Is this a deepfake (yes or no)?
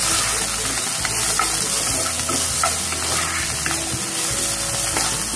no